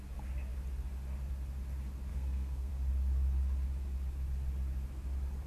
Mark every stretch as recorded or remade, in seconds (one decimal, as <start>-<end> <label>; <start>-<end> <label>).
0.0-2.1 recorded; 2.1-2.7 remade; 2.7-5.5 recorded